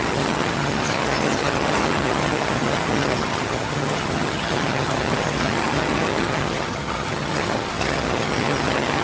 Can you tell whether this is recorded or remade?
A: remade